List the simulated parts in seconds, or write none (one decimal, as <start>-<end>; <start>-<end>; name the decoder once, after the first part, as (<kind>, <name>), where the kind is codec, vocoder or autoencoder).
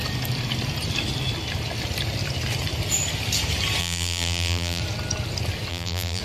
3.8-4.8 (vocoder, BigVGAN v2); 5.7-6.2